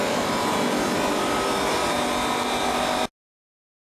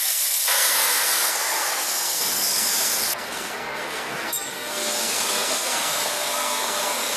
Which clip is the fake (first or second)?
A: second